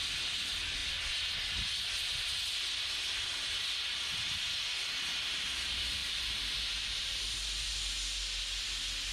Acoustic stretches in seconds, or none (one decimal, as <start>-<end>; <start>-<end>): 0.0-6.0; 7.2-9.1